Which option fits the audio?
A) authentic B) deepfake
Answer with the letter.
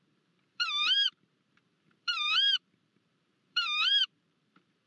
B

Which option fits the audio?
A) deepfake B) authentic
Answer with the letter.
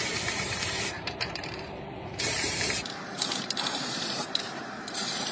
A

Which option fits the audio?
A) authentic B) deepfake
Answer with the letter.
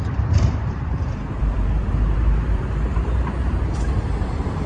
B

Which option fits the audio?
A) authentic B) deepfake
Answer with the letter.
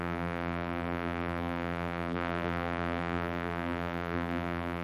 B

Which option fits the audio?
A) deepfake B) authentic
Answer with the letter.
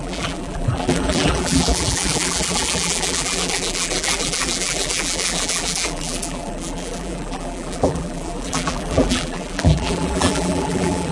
A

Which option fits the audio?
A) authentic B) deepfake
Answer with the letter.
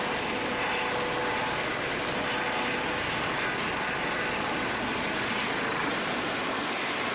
A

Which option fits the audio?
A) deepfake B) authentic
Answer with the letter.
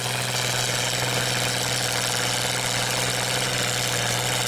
B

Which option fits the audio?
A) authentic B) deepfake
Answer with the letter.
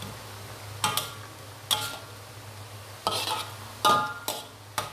A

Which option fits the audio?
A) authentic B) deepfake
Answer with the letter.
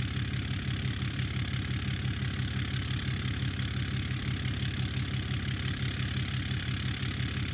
B